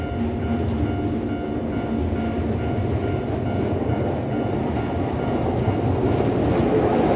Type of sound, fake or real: real